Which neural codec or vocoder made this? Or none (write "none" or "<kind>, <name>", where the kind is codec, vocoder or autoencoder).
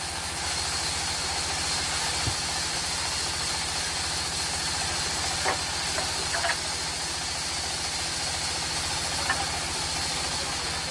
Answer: none